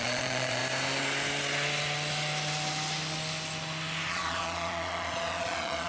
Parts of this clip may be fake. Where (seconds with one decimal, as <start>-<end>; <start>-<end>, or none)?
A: 0.0-0.6; 4.1-5.9

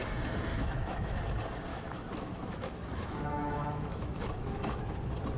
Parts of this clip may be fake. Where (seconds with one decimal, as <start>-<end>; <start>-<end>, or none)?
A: 0.5-1.2; 1.7-4.8